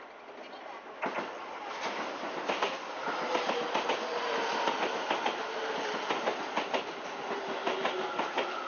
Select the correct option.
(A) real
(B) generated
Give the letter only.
A